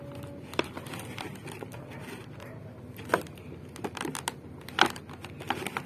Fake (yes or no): no